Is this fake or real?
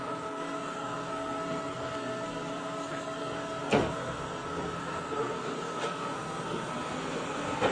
fake